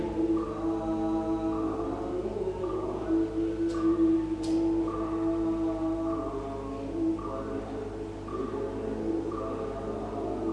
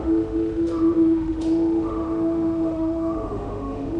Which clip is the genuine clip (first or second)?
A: first